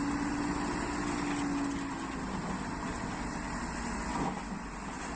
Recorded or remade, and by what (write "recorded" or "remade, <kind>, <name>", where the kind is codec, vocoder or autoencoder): recorded